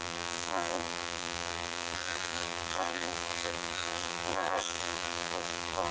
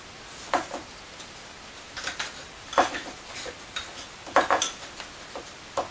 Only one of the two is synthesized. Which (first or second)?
first